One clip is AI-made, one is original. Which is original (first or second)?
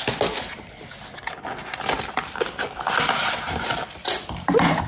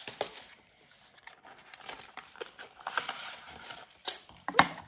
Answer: first